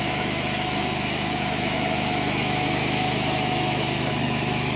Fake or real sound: fake